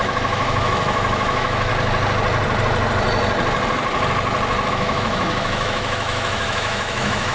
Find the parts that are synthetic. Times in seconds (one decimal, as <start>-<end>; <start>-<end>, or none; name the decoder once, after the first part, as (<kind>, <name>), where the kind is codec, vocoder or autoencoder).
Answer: 0.0-1.7 (autoencoder, DAC-VAE); 4.7-7.3